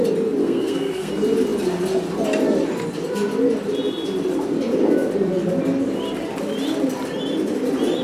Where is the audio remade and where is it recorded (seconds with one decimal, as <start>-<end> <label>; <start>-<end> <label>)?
0.0-0.4 recorded; 0.4-1.1 remade; 1.1-8.0 recorded